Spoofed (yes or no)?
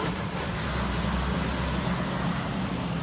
no